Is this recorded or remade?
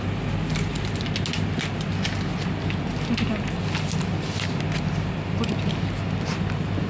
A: recorded